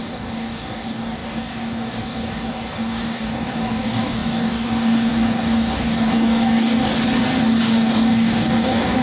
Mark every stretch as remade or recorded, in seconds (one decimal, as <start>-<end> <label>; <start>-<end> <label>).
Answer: 0.0-6.9 remade; 6.9-7.6 recorded; 7.6-9.0 remade